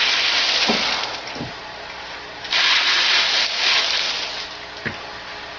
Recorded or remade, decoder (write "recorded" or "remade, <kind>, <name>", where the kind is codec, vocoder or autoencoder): recorded